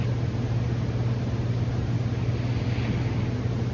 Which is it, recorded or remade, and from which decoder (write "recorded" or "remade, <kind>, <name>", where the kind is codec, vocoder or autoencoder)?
recorded